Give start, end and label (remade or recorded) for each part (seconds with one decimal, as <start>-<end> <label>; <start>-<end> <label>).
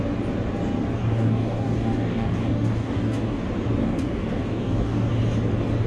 0.0-1.0 recorded; 1.0-3.4 remade; 3.4-3.8 recorded; 3.8-5.1 remade; 5.1-5.9 recorded